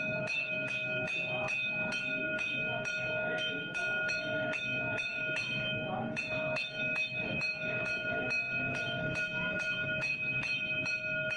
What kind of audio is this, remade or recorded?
remade